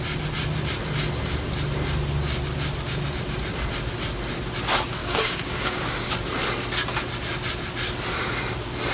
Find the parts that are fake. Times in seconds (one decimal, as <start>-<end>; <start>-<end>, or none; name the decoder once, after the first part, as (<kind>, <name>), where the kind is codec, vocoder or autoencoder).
5.0-6.1 (codec, DAC)